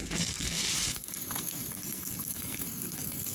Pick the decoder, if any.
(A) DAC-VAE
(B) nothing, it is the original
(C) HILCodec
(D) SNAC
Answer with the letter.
D